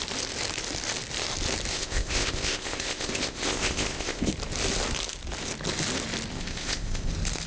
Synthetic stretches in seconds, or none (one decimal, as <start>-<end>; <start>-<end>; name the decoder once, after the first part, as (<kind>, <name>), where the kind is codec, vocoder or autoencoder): 1.7-4.3 (codec, ZipCodec); 6.3-7.1